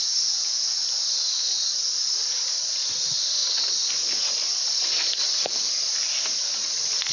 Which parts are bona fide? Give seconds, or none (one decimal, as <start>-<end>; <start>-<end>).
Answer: 0.8-7.1